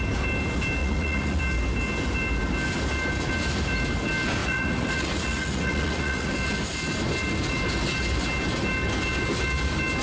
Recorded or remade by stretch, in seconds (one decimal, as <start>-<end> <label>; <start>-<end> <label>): 0.0-0.8 recorded; 0.8-1.4 remade; 1.4-4.4 recorded; 4.4-6.3 remade; 6.3-10.0 recorded